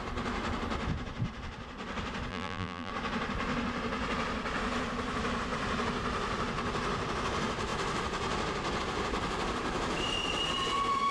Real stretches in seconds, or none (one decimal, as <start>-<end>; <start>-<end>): 0.0-2.3; 2.9-11.1

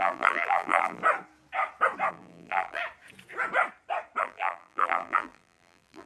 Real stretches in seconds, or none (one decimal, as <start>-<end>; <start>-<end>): 1.0-2.1; 2.8-4.2

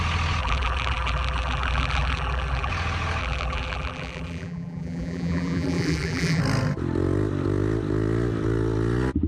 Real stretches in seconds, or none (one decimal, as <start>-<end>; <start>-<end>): 0.0-0.4; 2.7-3.2; 6.4-9.3

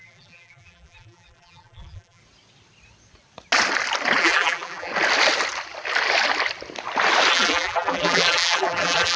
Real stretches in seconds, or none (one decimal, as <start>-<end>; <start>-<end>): 2.2-4.2; 4.9-7.3

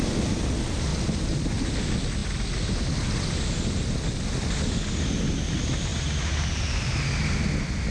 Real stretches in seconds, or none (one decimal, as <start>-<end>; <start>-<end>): 0.0-0.9; 1.5-5.9; 7.0-7.9

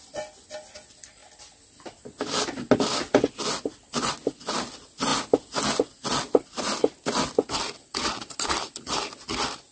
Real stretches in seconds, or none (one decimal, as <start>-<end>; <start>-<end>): 0.0-9.7

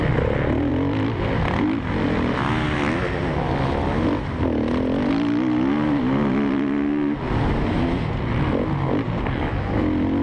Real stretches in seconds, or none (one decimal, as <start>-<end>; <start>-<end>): 0.0-10.2

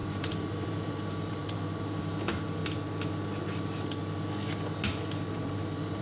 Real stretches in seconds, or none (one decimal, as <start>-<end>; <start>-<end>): 2.6-5.3